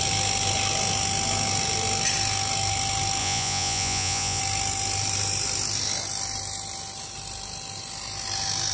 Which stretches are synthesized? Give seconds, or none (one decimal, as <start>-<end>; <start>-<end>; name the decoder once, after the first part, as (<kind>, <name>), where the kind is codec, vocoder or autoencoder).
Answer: 3.2-4.4 (vocoder, Vocos)